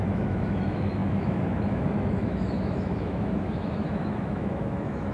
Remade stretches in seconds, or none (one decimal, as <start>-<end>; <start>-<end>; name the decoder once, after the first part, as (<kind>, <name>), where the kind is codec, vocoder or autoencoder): 0.0-5.1 (autoencoder, DAC-VAE)